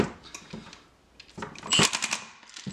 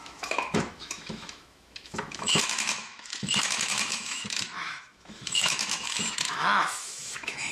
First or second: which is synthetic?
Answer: second